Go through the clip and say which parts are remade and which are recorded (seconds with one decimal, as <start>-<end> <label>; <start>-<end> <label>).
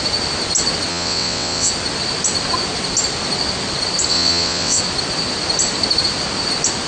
0.0-0.9 recorded; 0.9-1.7 remade; 1.7-4.1 recorded; 4.1-4.8 remade; 4.8-6.9 recorded